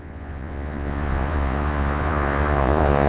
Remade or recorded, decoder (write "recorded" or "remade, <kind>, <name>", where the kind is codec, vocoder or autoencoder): remade, vocoder, Vocos